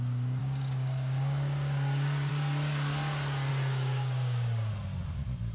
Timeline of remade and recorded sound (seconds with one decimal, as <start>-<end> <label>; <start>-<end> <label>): 0.0-0.4 recorded; 0.4-2.3 remade; 2.3-3.5 recorded; 3.5-4.7 remade; 4.7-5.5 recorded